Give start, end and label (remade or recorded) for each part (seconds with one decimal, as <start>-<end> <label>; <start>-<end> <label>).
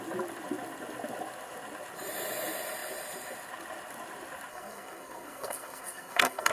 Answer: 0.0-4.5 recorded; 4.5-6.5 remade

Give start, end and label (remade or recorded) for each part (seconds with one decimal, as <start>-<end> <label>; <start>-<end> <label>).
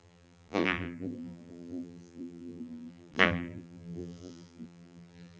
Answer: 0.0-5.4 remade